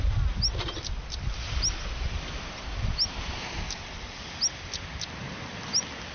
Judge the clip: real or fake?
real